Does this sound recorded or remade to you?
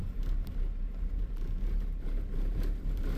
recorded